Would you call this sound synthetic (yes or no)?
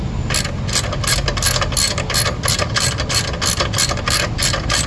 no